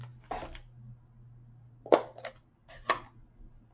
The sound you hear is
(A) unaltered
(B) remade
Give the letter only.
A